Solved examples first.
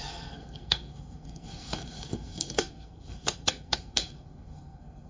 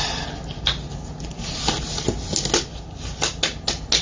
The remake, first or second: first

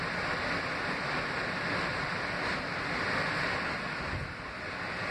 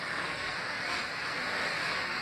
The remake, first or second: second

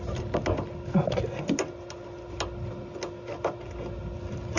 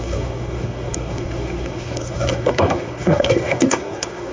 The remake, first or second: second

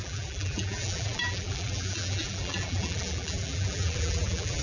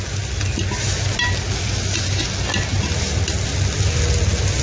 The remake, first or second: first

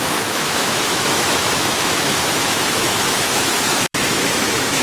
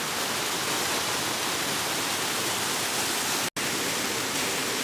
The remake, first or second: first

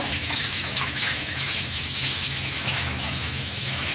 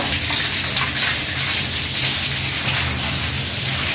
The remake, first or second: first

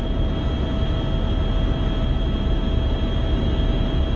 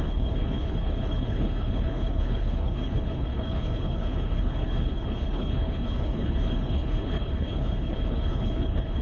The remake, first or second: second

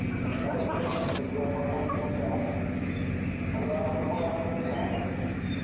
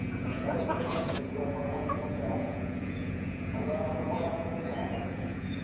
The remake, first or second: second